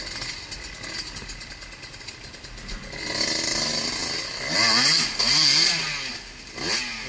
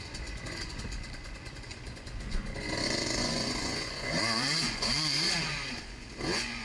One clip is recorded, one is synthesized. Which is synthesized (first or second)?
second